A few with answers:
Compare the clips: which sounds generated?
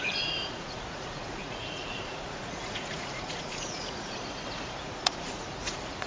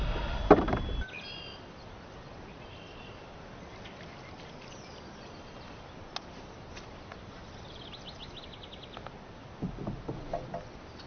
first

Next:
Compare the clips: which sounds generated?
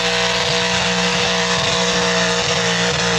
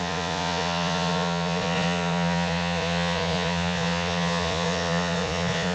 second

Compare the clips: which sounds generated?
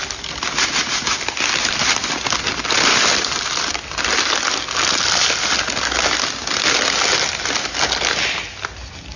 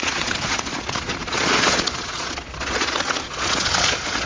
second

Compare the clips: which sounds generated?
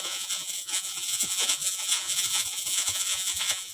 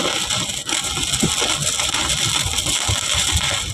first